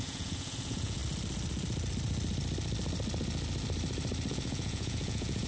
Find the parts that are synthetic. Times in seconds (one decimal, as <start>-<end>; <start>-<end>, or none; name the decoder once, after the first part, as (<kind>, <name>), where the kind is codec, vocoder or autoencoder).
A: 0.0-1.0 (vocoder, Vocos); 4.3-5.5